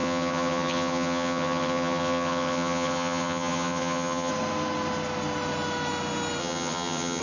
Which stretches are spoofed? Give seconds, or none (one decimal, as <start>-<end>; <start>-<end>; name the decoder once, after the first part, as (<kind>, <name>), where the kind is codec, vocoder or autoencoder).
0.0-4.3 (vocoder, HiFi-GAN); 6.4-7.2

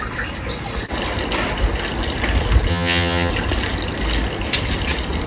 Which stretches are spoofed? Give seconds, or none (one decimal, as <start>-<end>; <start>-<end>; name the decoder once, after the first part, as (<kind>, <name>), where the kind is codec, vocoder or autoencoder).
2.7-3.3 (vocoder, HiFi-GAN)

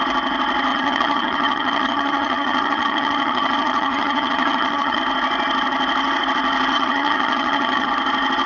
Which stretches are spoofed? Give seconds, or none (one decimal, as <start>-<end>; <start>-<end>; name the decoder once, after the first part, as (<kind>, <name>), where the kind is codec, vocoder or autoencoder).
0.7-5.0 (vocoder, HiFi-GAN); 6.7-7.9

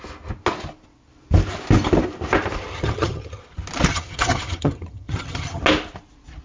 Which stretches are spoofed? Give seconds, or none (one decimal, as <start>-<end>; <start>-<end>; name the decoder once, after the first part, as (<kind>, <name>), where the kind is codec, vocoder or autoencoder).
2.7-3.4 (vocoder, HiFi-GAN); 3.9-5.6